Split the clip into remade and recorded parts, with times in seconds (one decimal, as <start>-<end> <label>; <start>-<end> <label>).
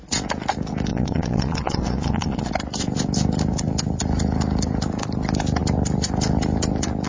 0.0-0.9 recorded; 0.9-2.5 remade; 2.5-7.1 recorded